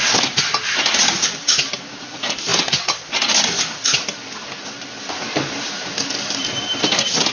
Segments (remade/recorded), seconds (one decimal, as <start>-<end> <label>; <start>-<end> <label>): 0.0-7.3 recorded